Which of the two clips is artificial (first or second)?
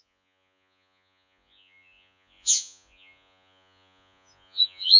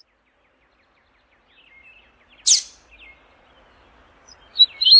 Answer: first